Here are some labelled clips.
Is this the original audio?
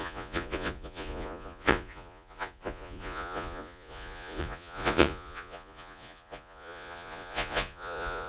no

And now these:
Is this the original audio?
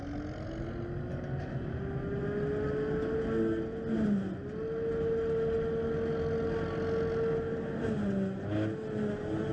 yes